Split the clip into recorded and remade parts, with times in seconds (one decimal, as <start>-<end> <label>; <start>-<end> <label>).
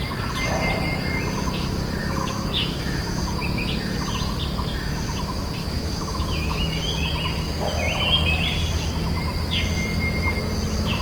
0.0-2.0 recorded; 2.0-3.2 remade; 3.2-5.6 recorded; 5.6-6.8 remade; 6.8-11.0 recorded